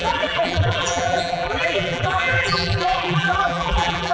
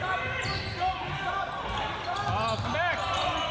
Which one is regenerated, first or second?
first